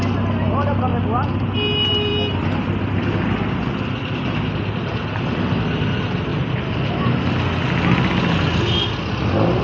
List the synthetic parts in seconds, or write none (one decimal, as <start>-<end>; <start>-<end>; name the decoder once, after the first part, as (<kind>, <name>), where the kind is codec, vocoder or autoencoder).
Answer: 6.3-6.9 (vocoder, BigVGAN v2)